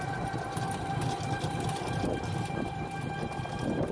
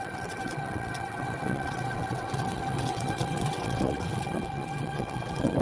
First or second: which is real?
first